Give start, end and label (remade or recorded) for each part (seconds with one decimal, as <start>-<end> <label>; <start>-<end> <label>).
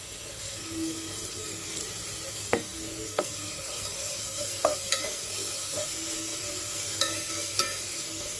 0.0-1.8 remade; 1.8-2.3 recorded; 2.3-8.4 remade